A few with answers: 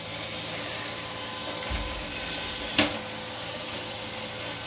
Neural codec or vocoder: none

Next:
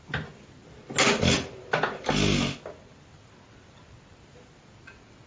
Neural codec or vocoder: none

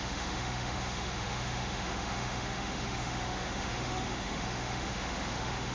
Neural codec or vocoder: autoencoder, DAC-VAE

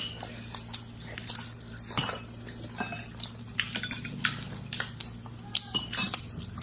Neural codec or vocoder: vocoder, BigVGAN v2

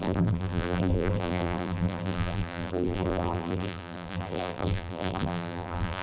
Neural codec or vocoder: vocoder, BigVGAN v2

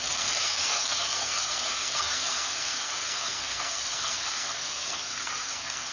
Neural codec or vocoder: codec, SNAC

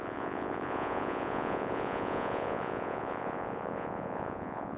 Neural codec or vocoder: vocoder, Vocos